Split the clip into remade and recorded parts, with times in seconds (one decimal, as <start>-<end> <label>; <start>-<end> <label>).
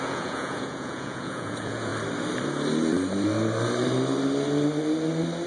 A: 0.0-1.9 remade; 1.9-5.5 recorded